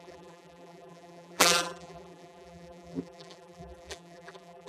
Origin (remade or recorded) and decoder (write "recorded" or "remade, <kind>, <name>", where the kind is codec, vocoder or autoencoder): remade, vocoder, BigVGAN v2